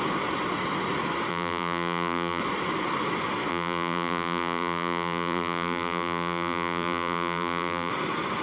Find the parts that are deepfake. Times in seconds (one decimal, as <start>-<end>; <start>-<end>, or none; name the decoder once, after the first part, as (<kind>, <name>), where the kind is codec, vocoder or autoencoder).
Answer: 1.3-2.4 (vocoder, BigVGAN v2); 3.5-7.9